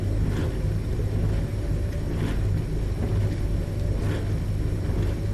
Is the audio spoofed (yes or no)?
no